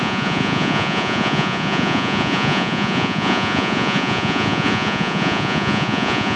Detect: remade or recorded remade